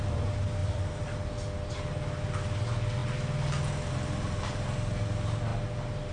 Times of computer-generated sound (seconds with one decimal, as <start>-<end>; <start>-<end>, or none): 0.6-1.1